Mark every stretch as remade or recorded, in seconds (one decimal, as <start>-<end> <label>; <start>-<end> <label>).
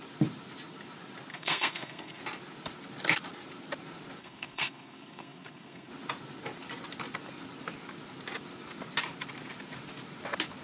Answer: 0.0-1.3 recorded; 1.3-2.2 remade; 2.2-4.2 recorded; 4.2-5.9 remade; 5.9-10.6 recorded